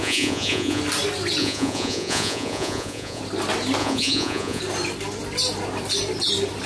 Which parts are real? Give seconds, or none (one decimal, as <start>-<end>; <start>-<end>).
0.8-1.4; 3.2-3.8; 4.6-6.7